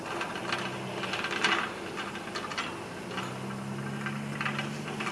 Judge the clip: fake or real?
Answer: real